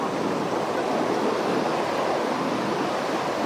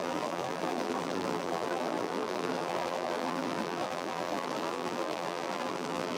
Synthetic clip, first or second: second